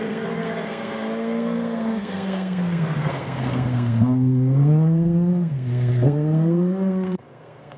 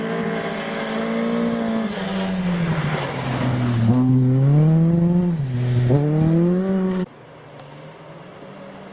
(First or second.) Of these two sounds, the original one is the second